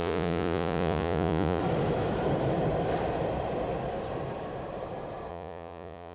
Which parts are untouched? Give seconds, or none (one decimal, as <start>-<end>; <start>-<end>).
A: 1.6-5.3